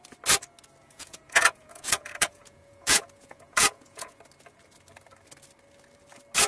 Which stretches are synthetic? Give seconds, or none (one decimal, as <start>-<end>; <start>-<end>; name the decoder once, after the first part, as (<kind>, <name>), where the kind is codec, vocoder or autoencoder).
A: 0.8-4.2 (vocoder, Vocos)